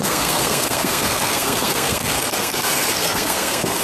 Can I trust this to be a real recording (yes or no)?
no